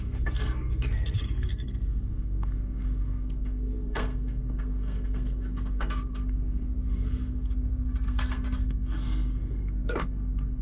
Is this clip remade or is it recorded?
remade